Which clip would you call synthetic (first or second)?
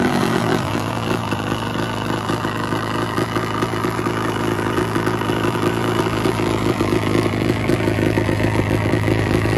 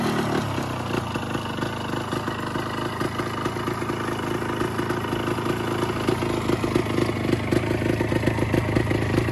first